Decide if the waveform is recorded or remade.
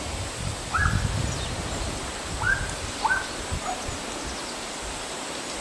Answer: recorded